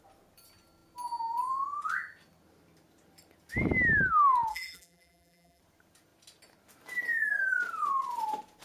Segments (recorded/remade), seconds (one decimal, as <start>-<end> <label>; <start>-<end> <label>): 0.0-4.5 recorded; 4.5-5.6 remade; 5.6-8.6 recorded